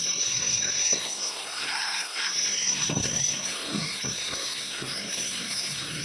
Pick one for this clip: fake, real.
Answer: fake